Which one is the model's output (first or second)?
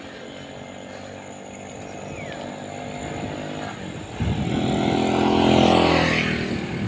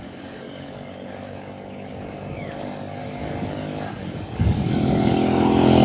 second